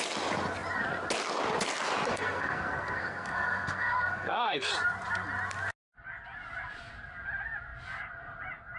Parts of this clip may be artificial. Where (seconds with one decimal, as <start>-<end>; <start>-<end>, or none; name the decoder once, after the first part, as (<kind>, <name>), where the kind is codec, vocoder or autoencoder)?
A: 2.1-4.7 (codec, SNAC)